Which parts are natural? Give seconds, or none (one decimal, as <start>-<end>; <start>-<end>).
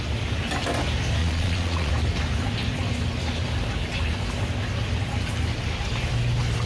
0.0-1.2; 1.9-6.7